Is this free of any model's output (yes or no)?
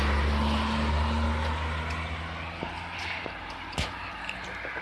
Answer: yes